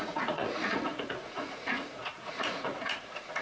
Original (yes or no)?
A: no